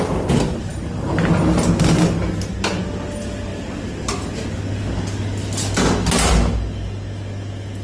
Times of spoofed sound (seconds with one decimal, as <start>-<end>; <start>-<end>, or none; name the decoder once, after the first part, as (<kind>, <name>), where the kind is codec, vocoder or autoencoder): none